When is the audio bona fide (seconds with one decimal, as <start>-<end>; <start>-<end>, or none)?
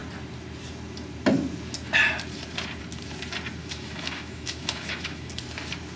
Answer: 0.0-3.6; 5.3-6.0